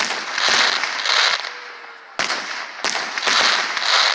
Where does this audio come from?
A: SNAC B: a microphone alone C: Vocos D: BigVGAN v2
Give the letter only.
B